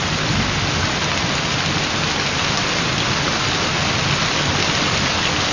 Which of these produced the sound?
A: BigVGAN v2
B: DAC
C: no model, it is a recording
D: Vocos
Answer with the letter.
C